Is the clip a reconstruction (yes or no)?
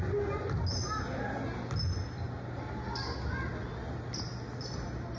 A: no